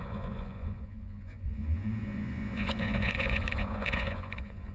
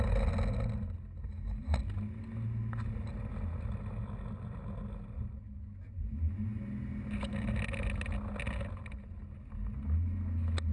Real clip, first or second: second